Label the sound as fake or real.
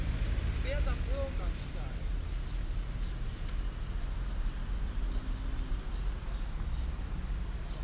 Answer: real